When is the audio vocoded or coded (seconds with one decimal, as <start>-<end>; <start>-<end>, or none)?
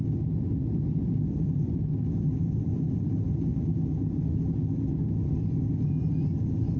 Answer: 0.9-1.7